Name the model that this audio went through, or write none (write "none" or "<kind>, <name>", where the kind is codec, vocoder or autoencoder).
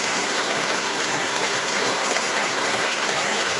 codec, SNAC